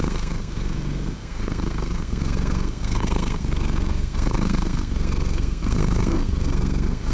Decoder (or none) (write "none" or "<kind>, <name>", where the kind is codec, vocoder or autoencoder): codec, SNAC